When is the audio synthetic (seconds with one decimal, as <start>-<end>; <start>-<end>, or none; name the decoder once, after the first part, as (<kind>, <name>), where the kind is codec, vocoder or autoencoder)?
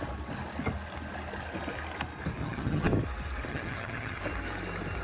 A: 2.4-2.9 (vocoder, HiFi-GAN); 3.5-4.2